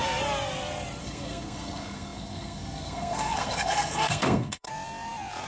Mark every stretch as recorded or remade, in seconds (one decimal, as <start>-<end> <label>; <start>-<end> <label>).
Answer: 0.0-1.0 recorded; 1.0-4.7 remade; 4.7-5.5 recorded